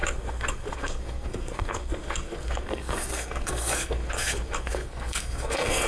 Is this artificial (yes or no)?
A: yes